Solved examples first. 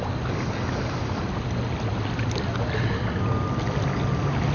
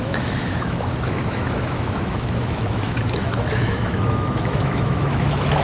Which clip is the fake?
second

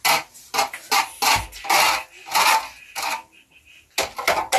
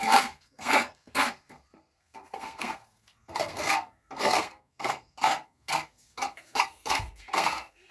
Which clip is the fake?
second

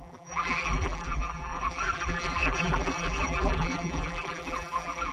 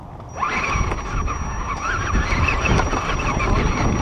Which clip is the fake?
first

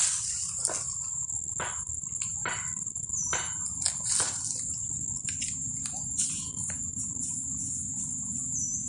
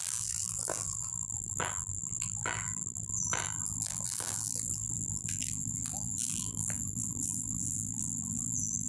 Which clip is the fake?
second